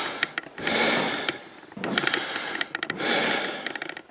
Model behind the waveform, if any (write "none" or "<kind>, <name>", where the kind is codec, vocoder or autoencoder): none